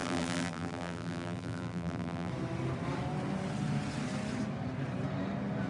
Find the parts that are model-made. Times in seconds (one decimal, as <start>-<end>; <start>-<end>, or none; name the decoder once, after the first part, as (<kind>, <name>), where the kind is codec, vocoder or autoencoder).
0.0-2.3 (vocoder, BigVGAN v2)